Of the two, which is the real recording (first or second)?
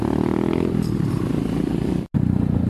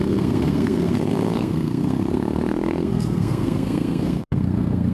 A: first